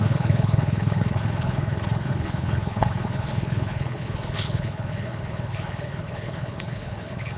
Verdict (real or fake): fake